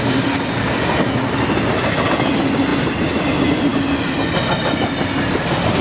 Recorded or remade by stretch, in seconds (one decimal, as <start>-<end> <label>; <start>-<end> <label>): 0.0-5.8 recorded